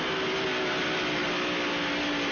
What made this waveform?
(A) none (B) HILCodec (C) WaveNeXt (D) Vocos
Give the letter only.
A